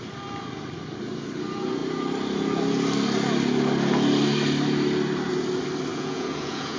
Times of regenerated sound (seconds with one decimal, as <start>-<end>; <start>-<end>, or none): 5.9-6.8